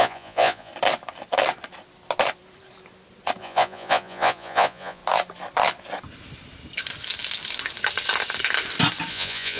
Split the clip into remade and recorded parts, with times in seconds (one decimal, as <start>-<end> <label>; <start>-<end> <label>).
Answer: 0.0-0.7 remade; 0.7-3.4 recorded; 3.4-5.0 remade; 5.0-9.1 recorded; 9.1-9.6 remade